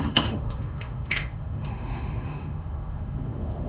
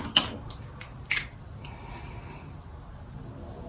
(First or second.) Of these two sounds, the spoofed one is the first